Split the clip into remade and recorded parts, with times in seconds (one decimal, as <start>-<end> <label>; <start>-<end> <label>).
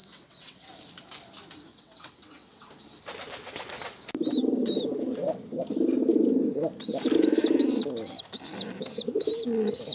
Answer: 0.0-0.7 remade; 0.7-1.7 recorded; 1.7-2.7 remade; 2.7-9.9 recorded